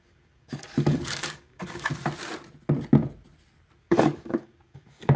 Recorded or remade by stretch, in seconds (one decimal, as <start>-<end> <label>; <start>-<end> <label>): 0.0-1.9 remade; 1.9-3.8 recorded; 3.8-5.2 remade